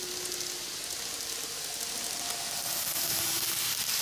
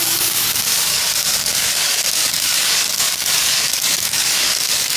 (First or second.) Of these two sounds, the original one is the first